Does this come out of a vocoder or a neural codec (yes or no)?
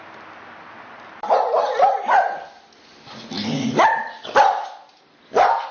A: no